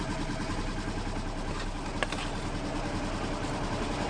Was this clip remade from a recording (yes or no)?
no